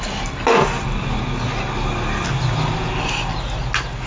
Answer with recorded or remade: recorded